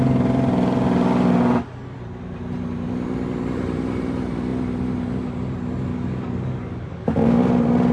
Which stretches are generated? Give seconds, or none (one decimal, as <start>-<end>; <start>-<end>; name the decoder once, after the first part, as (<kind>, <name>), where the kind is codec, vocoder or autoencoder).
5.9-7.4 (codec, DAC)